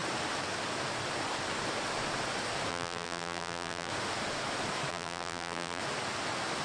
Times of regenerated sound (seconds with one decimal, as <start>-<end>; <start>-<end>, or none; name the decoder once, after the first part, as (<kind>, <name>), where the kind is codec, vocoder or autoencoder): 2.7-3.9 (vocoder, BigVGAN v2); 4.9-5.8